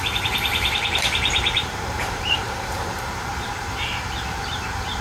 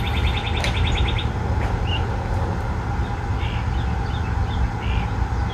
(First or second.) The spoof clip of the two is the first